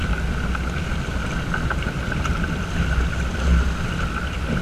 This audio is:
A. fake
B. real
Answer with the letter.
B